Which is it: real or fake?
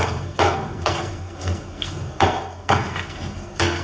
fake